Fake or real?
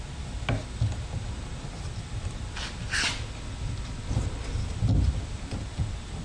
real